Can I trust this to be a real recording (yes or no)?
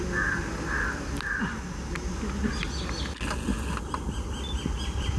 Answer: yes